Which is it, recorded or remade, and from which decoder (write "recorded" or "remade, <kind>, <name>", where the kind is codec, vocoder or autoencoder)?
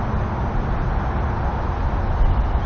recorded